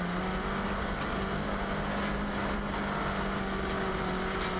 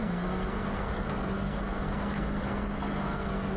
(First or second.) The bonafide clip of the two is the first